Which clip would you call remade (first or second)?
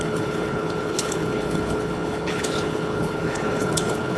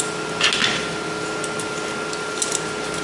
first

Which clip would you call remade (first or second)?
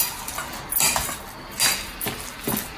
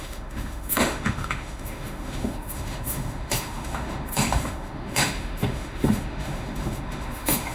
second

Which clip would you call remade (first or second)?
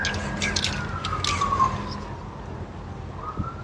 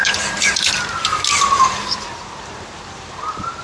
second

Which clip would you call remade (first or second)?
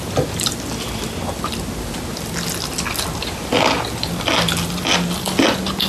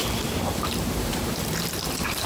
second